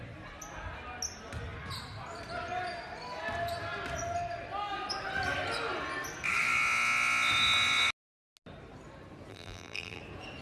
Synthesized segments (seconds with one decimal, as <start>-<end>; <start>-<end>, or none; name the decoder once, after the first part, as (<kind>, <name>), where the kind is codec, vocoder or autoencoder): 9.3-10.0 (vocoder, BigVGAN v2)

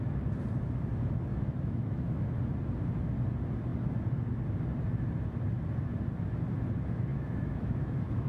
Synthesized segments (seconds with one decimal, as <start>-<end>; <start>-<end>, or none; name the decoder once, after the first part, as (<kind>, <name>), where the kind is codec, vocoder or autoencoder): 1.3-2.3 (autoencoder, DAC-VAE); 7.1-8.3

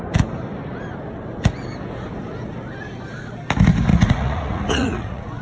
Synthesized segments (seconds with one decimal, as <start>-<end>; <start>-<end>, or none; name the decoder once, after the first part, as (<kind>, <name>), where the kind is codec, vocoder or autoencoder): 3.9-5.4 (vocoder, Vocos)

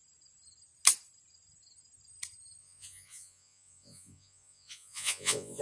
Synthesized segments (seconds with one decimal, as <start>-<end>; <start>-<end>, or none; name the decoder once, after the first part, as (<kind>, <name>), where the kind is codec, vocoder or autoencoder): 2.6-5.6 (vocoder, Vocos)

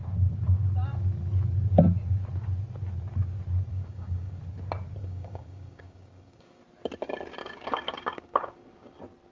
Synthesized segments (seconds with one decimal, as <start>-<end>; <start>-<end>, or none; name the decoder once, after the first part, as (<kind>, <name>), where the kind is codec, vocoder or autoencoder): 3.7-4.4 (codec, DAC); 5.0-6.6; 7.4-8.9

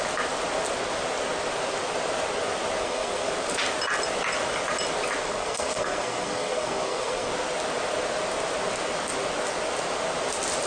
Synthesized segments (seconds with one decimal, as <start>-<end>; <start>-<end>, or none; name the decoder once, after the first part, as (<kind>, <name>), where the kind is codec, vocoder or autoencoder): 2.8-3.3 (codec, SNAC); 5.2-7.3

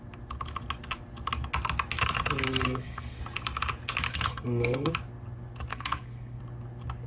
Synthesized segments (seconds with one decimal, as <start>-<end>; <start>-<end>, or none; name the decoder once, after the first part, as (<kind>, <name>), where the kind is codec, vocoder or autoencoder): 2.5-3.2 (codec, SNAC); 4.1-4.9; 5.7-6.4